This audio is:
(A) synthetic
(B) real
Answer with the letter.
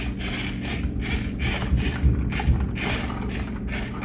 B